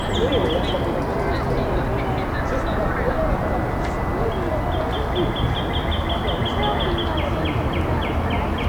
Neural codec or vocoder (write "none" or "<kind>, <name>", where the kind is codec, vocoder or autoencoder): none